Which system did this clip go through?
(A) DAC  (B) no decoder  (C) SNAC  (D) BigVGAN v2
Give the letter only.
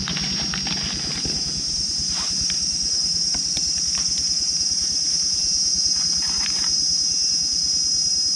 B